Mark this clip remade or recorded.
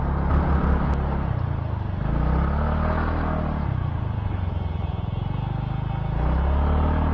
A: recorded